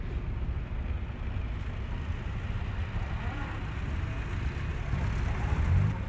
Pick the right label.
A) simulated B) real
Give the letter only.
B